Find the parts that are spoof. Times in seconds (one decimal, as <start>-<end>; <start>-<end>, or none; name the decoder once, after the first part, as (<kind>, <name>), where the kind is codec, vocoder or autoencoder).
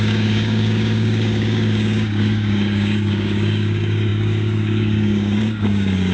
0.0-6.1 (codec, DAC)